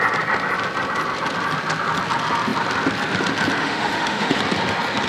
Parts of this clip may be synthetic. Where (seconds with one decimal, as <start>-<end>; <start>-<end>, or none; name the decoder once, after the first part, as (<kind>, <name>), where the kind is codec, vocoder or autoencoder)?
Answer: 3.6-4.4 (autoencoder, DAC-VAE)